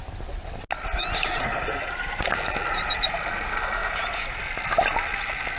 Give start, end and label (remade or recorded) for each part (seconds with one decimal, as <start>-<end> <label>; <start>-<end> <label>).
0.0-5.6 recorded